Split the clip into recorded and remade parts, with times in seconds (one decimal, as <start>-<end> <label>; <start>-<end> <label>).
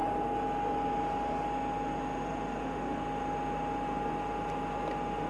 0.0-5.3 recorded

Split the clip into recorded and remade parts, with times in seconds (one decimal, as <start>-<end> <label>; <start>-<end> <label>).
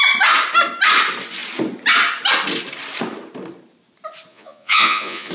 0.0-4.3 recorded; 4.3-5.3 remade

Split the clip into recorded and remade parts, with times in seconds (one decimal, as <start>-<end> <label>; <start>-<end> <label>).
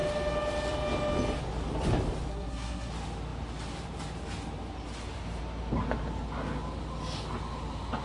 0.0-2.3 recorded; 2.3-2.9 remade; 2.9-8.0 recorded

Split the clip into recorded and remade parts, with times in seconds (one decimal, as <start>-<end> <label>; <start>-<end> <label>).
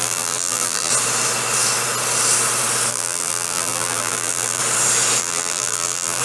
0.0-0.9 remade; 0.9-2.9 recorded; 2.9-4.6 remade; 4.6-5.2 recorded; 5.2-6.2 remade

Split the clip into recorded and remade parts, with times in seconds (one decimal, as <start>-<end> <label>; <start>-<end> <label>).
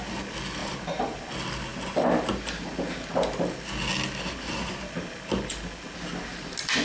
0.0-0.6 recorded; 0.6-1.2 remade; 1.2-6.8 recorded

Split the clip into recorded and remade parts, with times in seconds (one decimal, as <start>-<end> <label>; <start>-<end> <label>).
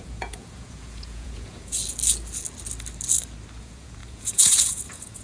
0.0-1.8 remade; 1.8-3.6 recorded; 3.6-5.2 remade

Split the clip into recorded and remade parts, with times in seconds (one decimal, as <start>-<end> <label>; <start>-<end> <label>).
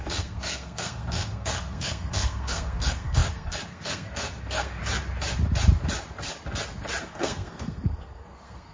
0.0-4.8 remade; 4.8-7.0 recorded; 7.0-8.7 remade